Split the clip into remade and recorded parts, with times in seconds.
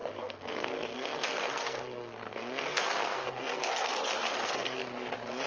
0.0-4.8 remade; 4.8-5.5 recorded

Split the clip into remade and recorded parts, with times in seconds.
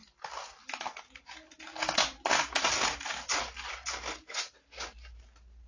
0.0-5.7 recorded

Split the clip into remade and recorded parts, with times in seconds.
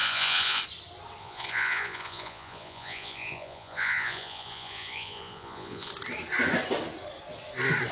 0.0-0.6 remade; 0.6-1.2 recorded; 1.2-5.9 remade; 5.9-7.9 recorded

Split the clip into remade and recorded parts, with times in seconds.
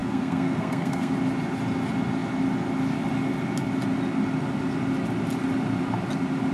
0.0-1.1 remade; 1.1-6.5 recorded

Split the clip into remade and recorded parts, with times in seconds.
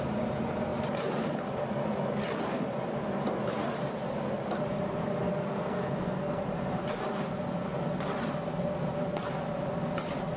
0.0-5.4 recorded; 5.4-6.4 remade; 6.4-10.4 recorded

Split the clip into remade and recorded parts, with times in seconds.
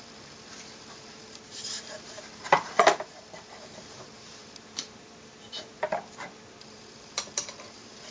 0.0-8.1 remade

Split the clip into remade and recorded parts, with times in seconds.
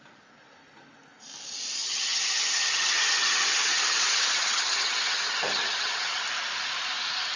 0.0-1.8 recorded; 1.8-6.2 remade; 6.2-7.4 recorded